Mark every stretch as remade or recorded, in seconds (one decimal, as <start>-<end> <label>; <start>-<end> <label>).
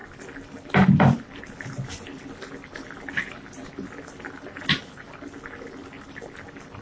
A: 0.0-6.8 recorded